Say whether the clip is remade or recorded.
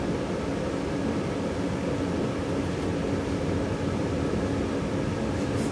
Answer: recorded